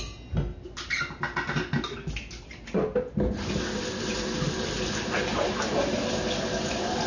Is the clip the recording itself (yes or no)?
yes